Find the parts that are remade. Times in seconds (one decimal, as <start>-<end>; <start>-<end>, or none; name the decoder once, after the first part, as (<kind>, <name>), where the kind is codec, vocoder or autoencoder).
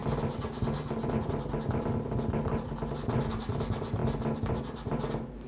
none